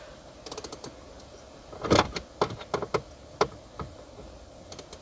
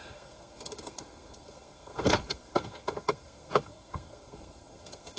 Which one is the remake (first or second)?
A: second